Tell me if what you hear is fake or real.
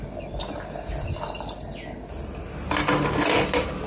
real